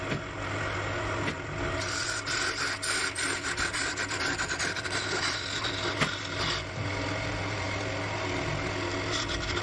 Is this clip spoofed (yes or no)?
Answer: no